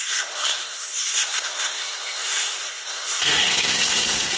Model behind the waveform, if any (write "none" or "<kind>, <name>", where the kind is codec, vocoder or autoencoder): codec, SNAC